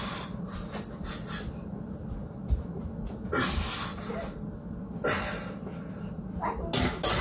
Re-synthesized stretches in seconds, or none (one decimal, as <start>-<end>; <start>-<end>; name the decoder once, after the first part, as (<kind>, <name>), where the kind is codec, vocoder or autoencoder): none